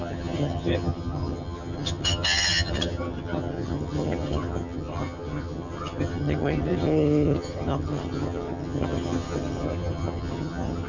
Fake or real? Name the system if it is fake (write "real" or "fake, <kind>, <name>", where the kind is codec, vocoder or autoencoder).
fake, vocoder, HiFi-GAN